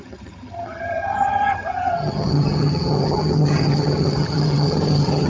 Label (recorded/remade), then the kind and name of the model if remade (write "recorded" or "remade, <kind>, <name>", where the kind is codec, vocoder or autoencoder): remade, vocoder, HiFi-GAN